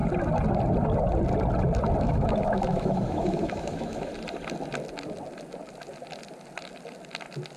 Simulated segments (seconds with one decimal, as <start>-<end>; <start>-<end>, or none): 2.0-4.1